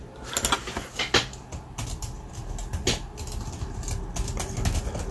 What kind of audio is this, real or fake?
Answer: real